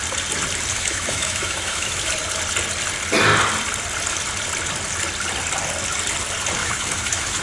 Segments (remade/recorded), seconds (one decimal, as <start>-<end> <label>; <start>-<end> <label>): 0.0-0.7 recorded; 0.7-2.1 remade; 2.1-6.6 recorded; 6.6-7.4 remade